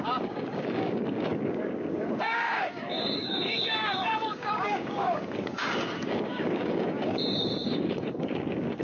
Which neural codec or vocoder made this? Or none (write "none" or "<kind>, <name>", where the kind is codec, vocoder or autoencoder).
codec, DAC